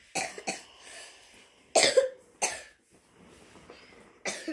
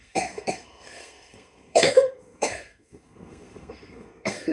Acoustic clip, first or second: first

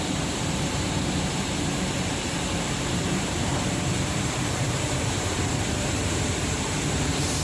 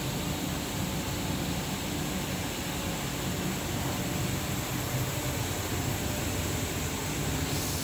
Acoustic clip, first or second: second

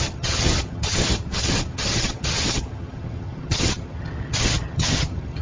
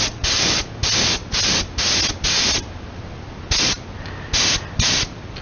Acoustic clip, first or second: second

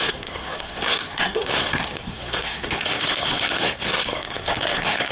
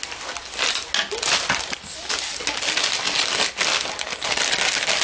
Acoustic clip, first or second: second